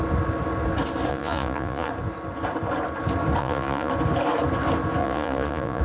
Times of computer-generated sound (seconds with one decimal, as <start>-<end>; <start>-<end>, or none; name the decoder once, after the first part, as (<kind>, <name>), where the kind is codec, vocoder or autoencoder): 1.1-1.9 (vocoder, Vocos); 3.4-3.9; 5.0-5.8